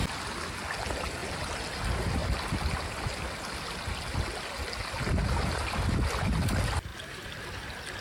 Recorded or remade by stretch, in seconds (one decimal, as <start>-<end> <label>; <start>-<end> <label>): 0.0-1.2 recorded; 1.2-1.8 remade; 1.8-6.9 recorded; 6.9-7.4 remade; 7.4-8.0 recorded